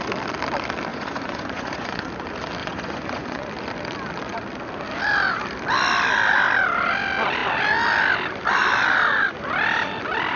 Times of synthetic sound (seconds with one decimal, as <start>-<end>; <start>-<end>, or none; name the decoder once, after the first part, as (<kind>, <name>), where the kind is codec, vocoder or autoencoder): 0.9-2.1 (vocoder, Vocos); 2.6-3.5